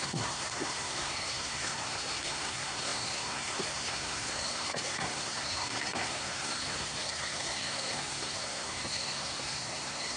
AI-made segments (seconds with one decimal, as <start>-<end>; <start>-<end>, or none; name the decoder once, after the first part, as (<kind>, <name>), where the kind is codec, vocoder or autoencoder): 0.0-10.2 (codec, SNAC)